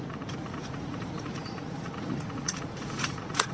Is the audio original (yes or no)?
no